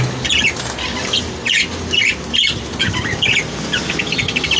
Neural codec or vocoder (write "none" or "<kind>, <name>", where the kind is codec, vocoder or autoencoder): none